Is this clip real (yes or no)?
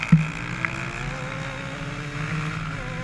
yes